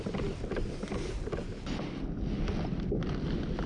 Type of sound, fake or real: real